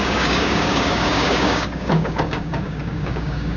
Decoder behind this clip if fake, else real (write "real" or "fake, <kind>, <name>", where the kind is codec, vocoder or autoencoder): fake, codec, DAC